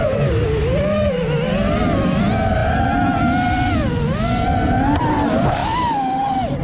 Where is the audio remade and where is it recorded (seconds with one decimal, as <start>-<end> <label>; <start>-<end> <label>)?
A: 0.0-6.6 recorded